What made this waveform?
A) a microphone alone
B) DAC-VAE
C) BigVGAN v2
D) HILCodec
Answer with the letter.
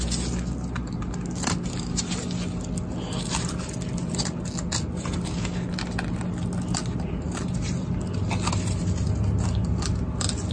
A